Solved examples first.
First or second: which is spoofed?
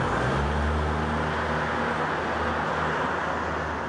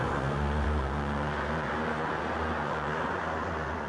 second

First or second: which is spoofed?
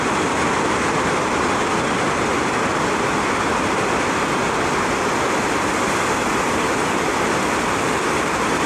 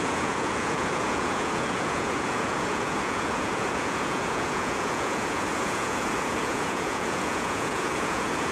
second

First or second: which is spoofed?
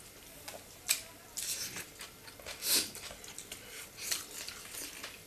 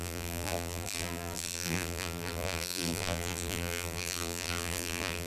second